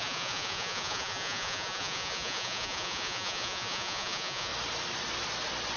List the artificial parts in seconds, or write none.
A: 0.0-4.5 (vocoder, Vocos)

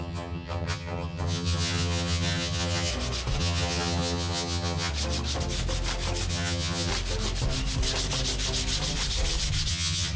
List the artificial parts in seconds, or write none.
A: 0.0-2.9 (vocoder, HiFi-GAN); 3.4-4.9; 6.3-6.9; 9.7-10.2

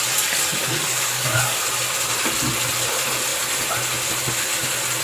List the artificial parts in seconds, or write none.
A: 0.6-1.6 (codec, DAC)

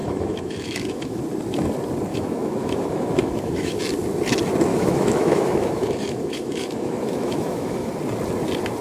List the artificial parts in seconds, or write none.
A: 0.0-1.2 (autoencoder, DAC-VAE); 2.1-3.8; 4.7-7.9

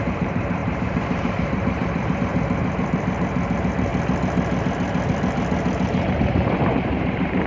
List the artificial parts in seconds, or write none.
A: 0.0-3.9 (vocoder, BigVGAN v2); 6.1-7.5